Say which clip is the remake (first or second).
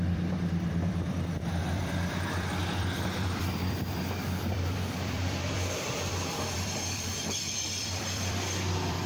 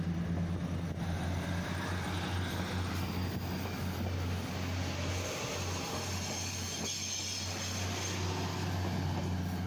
first